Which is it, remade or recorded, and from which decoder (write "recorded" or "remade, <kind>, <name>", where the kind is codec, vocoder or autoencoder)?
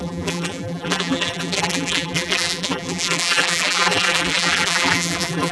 remade, vocoder, BigVGAN v2